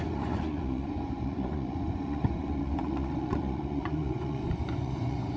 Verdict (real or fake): fake